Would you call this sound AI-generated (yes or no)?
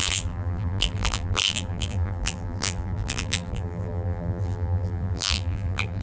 yes